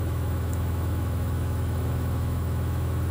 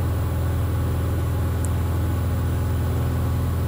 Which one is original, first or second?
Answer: second